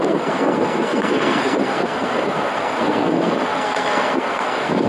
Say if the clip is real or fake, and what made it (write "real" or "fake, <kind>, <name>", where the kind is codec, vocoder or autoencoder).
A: fake, codec, SNAC